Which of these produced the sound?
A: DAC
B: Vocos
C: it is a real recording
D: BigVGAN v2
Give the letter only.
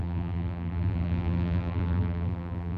D